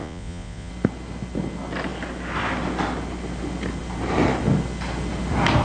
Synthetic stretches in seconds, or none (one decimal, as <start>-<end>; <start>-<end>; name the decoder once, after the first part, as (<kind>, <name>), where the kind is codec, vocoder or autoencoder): 0.0-0.7 (vocoder, Vocos)